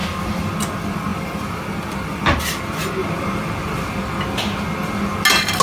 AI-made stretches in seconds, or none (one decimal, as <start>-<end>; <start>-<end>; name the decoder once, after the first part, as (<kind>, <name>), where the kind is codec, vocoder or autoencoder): 0.0-0.5 (vocoder, BigVGAN v2); 1.1-1.6